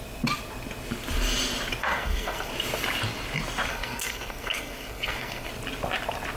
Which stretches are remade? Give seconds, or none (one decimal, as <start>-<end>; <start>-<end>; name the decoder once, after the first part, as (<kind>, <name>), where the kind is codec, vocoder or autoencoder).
1.8-2.5 (codec, SNAC); 3.7-5.5